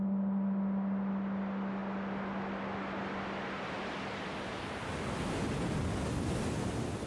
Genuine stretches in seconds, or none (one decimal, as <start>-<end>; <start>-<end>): 0.0-7.1